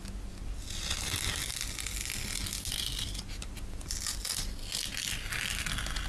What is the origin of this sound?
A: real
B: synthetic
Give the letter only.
A